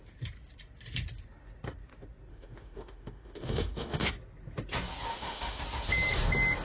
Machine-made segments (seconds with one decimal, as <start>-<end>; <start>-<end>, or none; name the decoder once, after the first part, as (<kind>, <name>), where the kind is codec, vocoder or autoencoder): 2.3-4.1 (autoencoder, DAC-VAE); 5.1-5.6